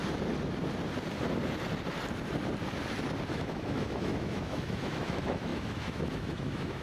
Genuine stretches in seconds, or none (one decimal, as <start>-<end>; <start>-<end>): 0.0-3.3